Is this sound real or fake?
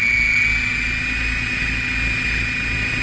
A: real